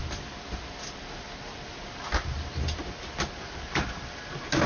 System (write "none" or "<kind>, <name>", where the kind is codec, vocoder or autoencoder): none